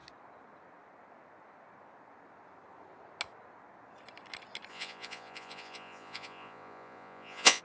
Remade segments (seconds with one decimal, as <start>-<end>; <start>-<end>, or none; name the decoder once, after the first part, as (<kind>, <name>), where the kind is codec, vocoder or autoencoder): 4.7-7.6 (vocoder, Vocos)